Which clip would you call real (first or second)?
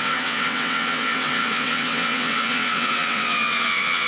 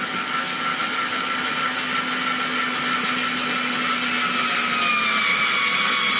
second